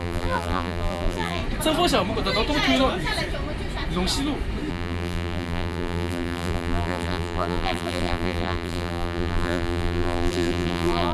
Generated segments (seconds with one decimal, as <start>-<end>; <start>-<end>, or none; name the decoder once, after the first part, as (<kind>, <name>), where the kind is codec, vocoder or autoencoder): 0.0-1.4 (vocoder, BigVGAN v2); 4.7-11.1